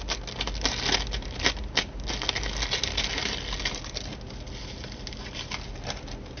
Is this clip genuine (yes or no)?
yes